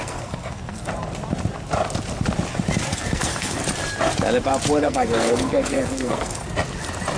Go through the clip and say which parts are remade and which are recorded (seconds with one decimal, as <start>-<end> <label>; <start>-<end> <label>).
0.0-0.9 remade; 0.9-2.9 recorded; 2.9-3.6 remade; 3.6-4.8 recorded; 4.8-6.4 remade; 6.4-7.2 recorded